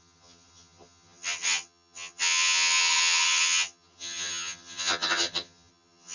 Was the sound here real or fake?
fake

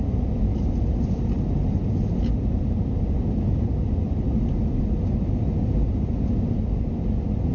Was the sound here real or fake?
real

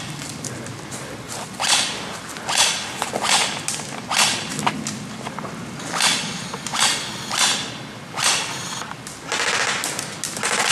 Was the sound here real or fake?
real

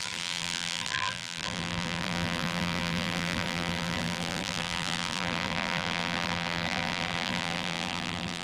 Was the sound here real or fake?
fake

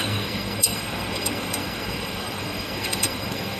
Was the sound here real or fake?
fake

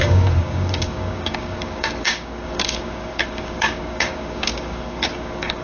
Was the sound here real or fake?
fake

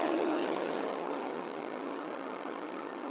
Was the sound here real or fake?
fake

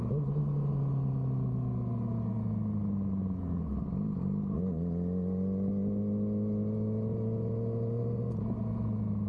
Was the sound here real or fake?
real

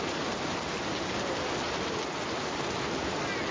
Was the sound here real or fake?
real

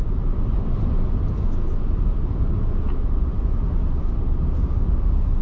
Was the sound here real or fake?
real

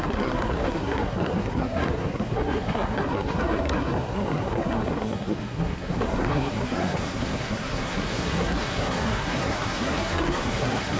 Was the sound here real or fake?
fake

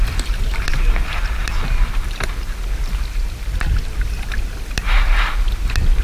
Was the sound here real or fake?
real